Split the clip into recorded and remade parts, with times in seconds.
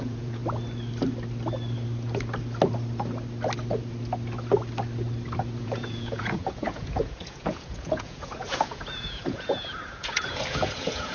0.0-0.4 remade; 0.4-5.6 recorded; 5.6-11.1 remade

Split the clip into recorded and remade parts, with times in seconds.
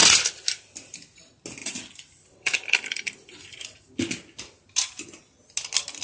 0.0-1.6 recorded; 1.6-4.0 remade; 4.0-6.0 recorded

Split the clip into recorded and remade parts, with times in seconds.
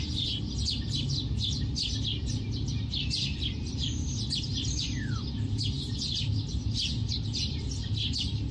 0.0-8.5 recorded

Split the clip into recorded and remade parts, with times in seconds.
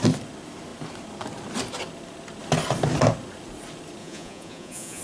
0.0-4.0 recorded; 4.0-5.0 remade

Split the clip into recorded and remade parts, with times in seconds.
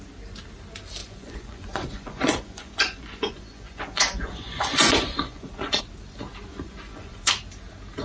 0.0-1.0 recorded; 1.0-5.8 remade; 5.8-6.5 recorded; 6.5-7.3 remade; 7.3-8.0 recorded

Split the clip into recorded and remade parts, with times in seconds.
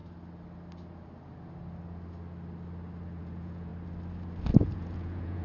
0.0-3.2 recorded; 3.2-3.7 remade; 3.7-4.6 recorded; 4.6-5.4 remade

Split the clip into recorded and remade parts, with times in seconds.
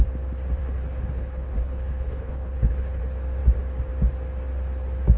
0.0-0.6 recorded; 0.6-3.0 remade; 3.0-5.2 recorded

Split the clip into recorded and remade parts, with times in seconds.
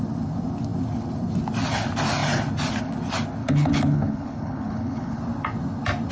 0.0-3.4 recorded; 3.4-5.2 remade; 5.2-6.1 recorded